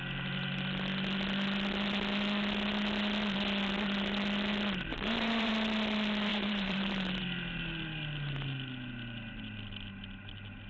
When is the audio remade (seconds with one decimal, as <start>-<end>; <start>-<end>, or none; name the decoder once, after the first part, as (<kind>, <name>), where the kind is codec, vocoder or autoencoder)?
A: 4.9-5.5 (vocoder, BigVGAN v2); 6.3-7.2